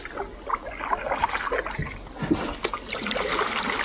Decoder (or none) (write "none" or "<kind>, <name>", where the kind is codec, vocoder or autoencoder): none